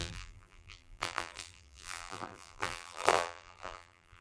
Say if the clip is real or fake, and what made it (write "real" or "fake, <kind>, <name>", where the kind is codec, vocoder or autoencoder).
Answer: fake, vocoder, BigVGAN v2